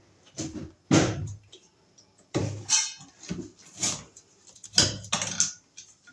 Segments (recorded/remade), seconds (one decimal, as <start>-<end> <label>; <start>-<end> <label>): 0.0-6.1 recorded